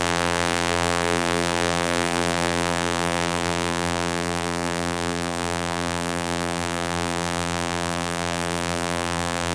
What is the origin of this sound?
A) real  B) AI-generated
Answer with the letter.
B